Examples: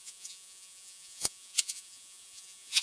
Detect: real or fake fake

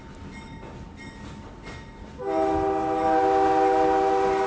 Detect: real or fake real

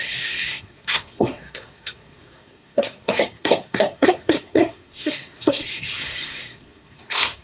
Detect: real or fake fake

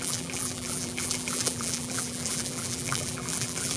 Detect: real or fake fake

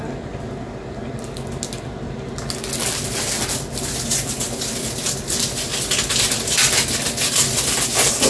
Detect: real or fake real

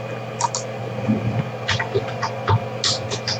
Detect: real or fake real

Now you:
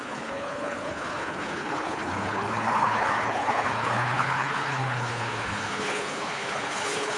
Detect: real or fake fake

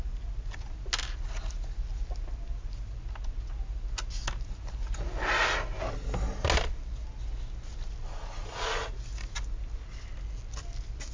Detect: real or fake real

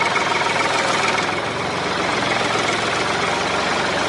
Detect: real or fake real